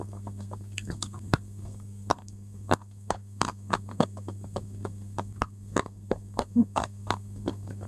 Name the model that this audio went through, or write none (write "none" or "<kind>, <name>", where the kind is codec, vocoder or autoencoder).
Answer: codec, SNAC